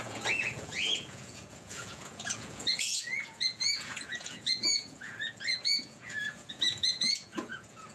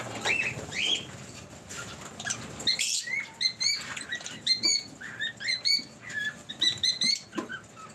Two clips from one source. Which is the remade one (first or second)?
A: first